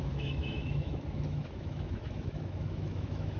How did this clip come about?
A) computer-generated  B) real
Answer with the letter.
A